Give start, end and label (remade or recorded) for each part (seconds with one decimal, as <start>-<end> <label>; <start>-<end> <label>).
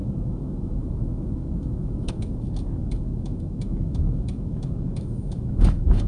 0.0-6.1 remade